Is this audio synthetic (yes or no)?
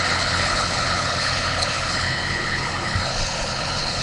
yes